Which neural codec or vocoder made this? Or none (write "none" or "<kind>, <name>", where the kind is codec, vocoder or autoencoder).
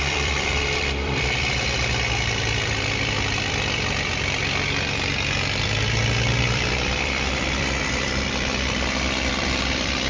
vocoder, BigVGAN v2